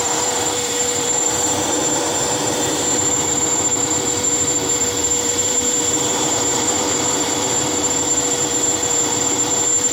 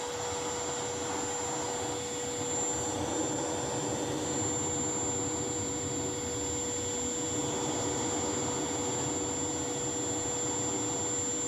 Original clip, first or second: second